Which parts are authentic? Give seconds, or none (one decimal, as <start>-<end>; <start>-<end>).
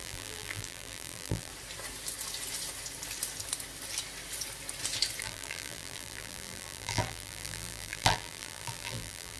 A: 1.5-5.2